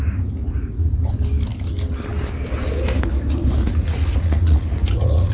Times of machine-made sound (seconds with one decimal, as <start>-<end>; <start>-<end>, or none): 0.4-1.0; 3.6-5.3